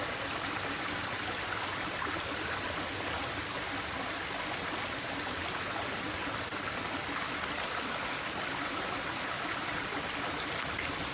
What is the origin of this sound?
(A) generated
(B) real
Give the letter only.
B